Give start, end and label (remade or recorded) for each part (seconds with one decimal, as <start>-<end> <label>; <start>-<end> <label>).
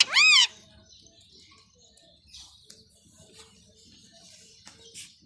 0.0-5.3 recorded